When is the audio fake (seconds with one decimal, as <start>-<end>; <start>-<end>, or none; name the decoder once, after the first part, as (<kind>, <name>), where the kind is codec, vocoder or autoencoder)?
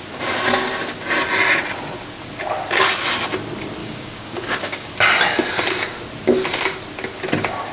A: 3.8-4.9 (codec, DAC)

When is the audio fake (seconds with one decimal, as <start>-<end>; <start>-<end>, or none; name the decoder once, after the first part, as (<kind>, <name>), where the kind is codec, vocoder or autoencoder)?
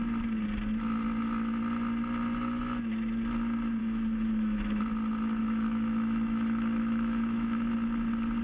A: 3.8-4.8 (autoencoder, DAC-VAE); 5.4-7.7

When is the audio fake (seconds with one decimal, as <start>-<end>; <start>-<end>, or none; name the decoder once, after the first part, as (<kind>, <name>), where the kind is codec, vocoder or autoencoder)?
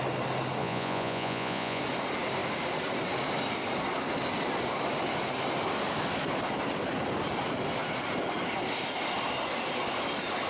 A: 0.6-1.8 (vocoder, Vocos)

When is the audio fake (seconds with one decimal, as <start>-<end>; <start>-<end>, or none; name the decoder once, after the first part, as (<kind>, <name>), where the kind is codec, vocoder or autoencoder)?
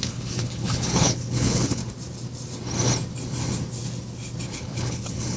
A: 0.0-1.8 (codec, HILCodec); 4.5-5.4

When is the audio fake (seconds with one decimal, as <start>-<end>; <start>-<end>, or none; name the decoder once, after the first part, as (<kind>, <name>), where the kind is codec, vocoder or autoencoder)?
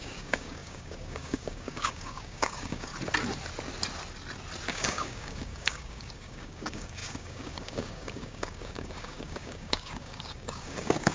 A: 0.0-2.9 (codec, DAC); 4.7-11.1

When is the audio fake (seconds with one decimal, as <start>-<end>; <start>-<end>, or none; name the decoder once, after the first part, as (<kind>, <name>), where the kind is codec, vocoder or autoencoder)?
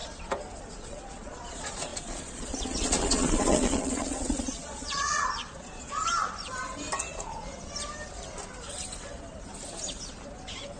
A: 0.6-6.1 (vocoder, Vocos); 7.0-7.5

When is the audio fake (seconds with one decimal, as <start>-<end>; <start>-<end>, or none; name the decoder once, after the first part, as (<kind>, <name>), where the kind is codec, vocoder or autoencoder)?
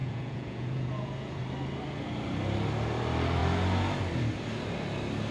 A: 0.0-1.4 (vocoder, Vocos)